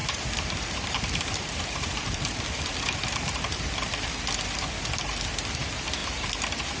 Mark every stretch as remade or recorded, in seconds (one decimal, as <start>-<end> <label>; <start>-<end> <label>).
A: 0.0-3.7 remade; 3.7-6.0 recorded; 6.0-6.8 remade

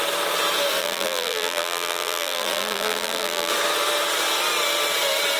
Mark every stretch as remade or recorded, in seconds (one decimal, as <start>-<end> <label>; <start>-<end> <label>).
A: 0.0-0.8 recorded; 0.8-3.5 remade; 3.5-5.4 recorded

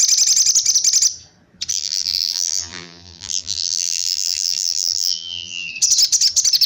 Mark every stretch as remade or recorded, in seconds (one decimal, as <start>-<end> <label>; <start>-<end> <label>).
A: 0.0-1.7 recorded; 1.7-5.7 remade; 5.7-6.7 recorded

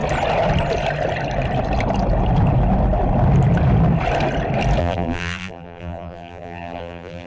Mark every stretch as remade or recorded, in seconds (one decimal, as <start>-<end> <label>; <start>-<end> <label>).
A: 0.0-4.8 recorded; 4.8-7.3 remade

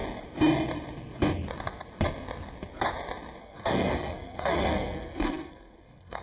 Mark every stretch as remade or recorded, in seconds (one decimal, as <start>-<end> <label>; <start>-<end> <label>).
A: 0.0-3.4 recorded; 3.4-6.2 remade

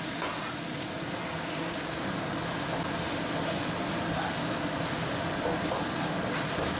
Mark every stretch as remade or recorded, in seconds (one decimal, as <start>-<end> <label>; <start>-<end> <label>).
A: 0.0-1.3 recorded; 1.3-2.0 remade; 2.0-6.8 recorded

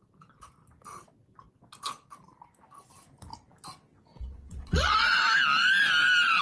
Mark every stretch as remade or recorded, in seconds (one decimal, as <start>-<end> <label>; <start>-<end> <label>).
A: 0.0-4.1 recorded; 4.1-5.2 remade; 5.2-6.4 recorded